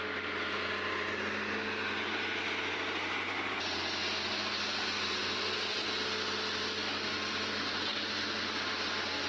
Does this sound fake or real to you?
real